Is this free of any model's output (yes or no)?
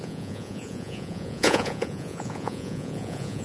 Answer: no